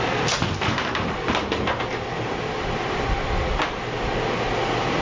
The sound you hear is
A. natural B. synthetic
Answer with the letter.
A